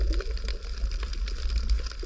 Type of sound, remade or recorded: recorded